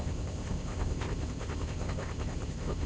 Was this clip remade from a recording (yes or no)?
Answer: yes